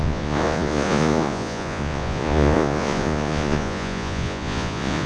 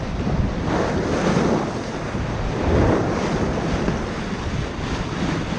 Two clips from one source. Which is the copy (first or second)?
first